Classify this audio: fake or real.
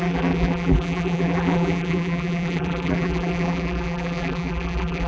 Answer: fake